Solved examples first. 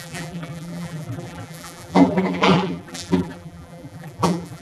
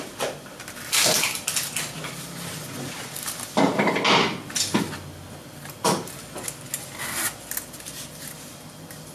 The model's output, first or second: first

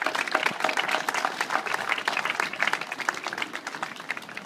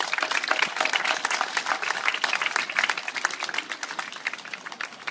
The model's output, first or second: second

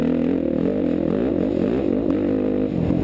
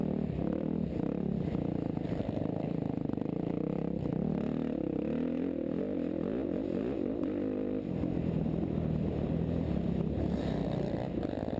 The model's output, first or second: second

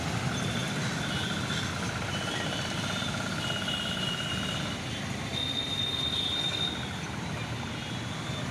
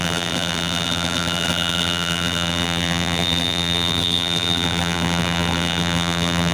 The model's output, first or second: second